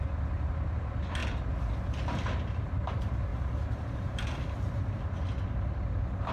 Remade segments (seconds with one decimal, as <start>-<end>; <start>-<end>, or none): 3.3-4.4